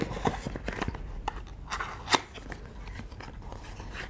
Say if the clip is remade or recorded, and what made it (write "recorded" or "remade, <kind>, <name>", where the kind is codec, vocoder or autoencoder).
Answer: recorded